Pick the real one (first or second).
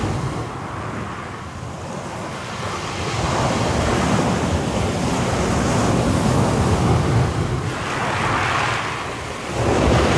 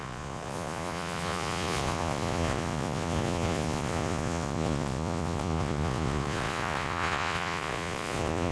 first